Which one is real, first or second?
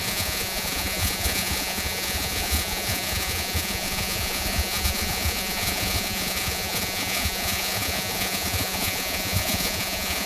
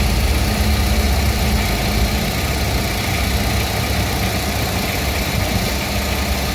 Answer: second